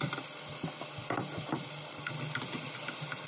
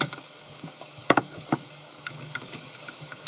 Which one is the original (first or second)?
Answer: first